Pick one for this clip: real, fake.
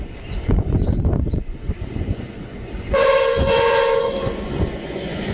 fake